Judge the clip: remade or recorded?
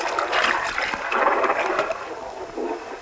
recorded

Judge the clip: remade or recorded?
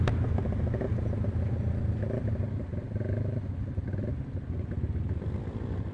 recorded